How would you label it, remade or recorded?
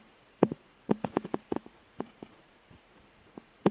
remade